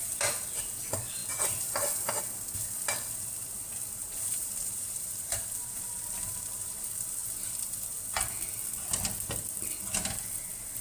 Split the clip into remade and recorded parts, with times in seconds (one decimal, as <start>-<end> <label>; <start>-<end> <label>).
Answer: 0.0-4.0 recorded; 4.0-5.8 remade; 5.8-10.8 recorded